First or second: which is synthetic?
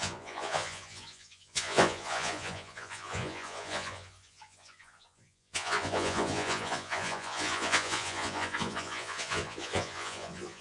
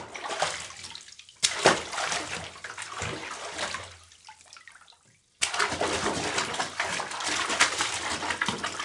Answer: first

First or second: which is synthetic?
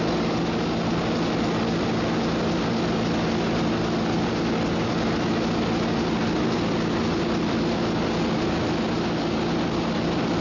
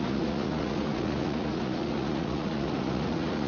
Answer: second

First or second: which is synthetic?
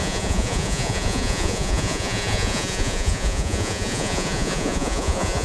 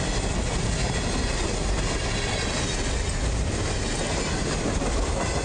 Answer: first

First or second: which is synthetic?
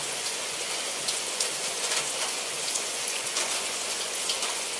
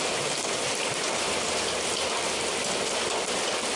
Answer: first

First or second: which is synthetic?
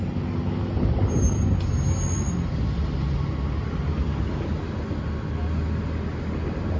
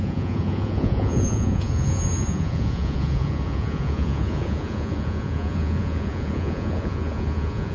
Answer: second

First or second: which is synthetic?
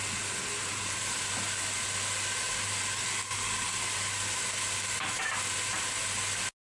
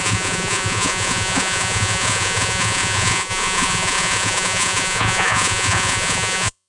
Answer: second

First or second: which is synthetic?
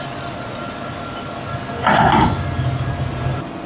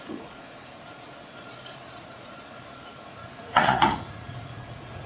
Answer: second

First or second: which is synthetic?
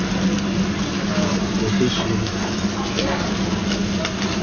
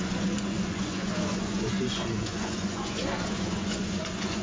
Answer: second